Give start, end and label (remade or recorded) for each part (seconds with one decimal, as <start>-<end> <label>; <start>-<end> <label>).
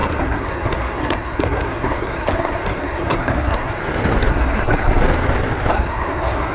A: 0.0-3.8 remade; 3.8-4.3 recorded; 4.3-5.0 remade; 5.0-5.7 recorded; 5.7-6.5 remade